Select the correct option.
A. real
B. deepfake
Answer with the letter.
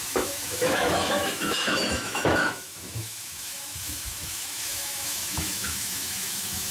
B